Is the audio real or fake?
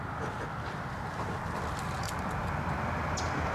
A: real